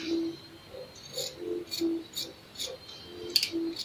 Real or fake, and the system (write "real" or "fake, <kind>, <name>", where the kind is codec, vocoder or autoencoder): real